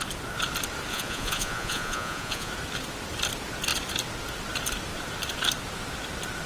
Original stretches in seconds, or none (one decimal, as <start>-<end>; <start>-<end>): 0.0-0.9; 2.5-6.5